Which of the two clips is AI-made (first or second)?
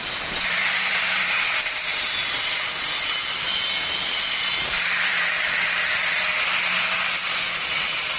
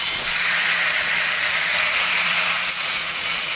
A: second